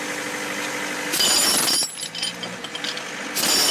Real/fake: real